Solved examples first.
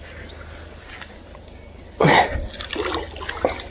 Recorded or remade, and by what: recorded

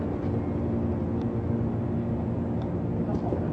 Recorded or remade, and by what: recorded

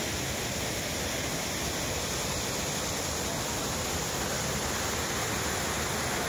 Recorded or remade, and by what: recorded